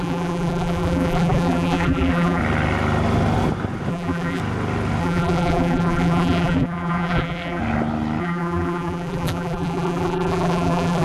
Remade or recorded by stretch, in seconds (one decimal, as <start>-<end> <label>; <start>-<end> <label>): 0.0-2.4 remade; 2.4-3.9 recorded; 3.9-4.4 remade; 4.4-5.0 recorded; 5.0-7.6 remade; 7.6-8.2 recorded; 8.2-11.0 remade